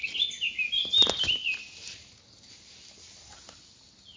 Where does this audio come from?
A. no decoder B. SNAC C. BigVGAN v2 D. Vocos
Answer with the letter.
A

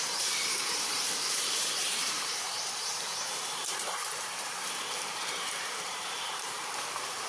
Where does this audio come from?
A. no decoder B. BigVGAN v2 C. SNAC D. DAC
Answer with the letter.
B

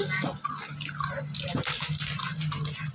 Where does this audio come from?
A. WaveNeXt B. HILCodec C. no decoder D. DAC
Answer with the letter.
C